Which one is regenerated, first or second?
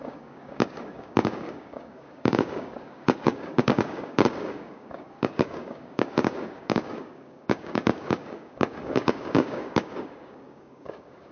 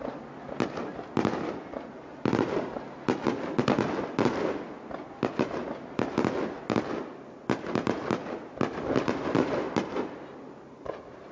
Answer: first